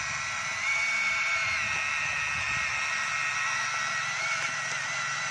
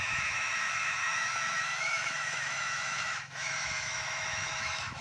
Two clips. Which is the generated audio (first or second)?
second